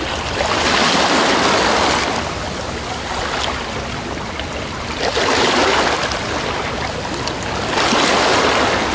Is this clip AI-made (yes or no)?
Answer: no